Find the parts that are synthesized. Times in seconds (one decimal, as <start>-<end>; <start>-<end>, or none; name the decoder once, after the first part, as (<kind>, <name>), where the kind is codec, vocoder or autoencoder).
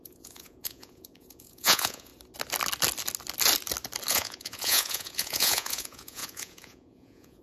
0.0-2.1 (vocoder, Vocos); 4.1-7.4